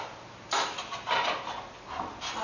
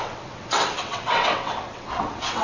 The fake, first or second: second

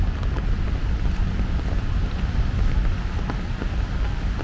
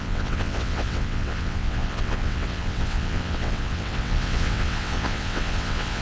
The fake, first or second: second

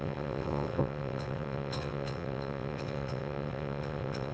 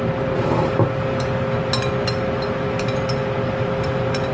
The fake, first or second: first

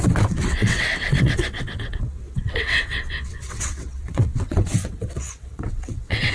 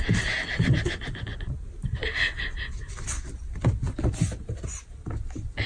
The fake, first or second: first